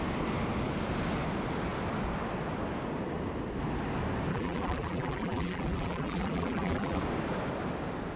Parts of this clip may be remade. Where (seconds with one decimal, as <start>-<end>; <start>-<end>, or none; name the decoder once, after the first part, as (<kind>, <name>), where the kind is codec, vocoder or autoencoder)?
4.3-7.0 (vocoder, BigVGAN v2)